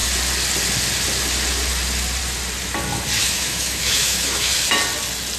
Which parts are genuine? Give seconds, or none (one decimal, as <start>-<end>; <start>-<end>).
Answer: 0.0-3.2; 4.7-5.4